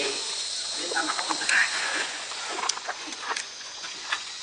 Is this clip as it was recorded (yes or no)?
no